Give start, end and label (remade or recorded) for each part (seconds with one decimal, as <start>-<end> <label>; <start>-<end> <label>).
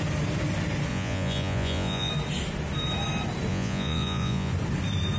0.0-0.9 recorded; 0.9-2.1 remade; 2.1-3.5 recorded; 3.5-4.5 remade; 4.5-5.2 recorded